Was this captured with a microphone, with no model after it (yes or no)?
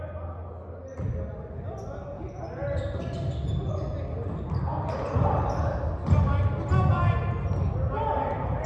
yes